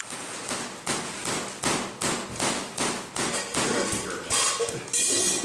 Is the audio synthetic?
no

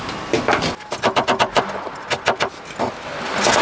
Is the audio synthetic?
no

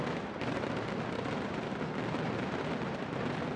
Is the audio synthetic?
no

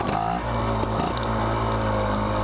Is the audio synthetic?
no